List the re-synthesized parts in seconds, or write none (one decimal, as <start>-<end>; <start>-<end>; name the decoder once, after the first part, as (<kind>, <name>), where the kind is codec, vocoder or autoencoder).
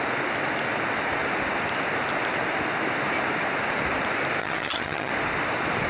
4.4-5.1 (vocoder, HiFi-GAN)